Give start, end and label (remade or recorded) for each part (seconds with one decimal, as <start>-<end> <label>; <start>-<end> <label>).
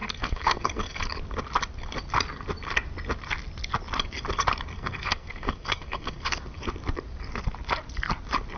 0.0-1.0 remade; 1.0-4.7 recorded; 4.7-6.4 remade; 6.4-8.6 recorded